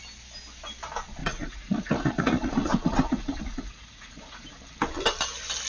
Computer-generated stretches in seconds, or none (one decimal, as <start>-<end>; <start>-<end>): 1.2-4.6